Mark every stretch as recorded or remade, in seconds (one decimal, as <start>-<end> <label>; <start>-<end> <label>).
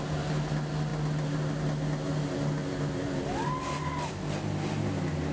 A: 0.0-5.3 recorded